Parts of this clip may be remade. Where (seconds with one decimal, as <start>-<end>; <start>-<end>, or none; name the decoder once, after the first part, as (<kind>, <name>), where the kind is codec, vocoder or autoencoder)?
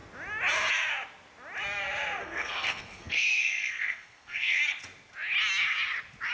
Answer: 2.2-4.6 (codec, SNAC)